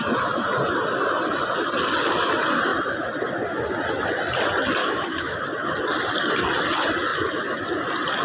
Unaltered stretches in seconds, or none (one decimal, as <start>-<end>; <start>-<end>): 0.0-4.8; 5.4-8.2